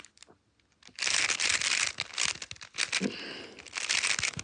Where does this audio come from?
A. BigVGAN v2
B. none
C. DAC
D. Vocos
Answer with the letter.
B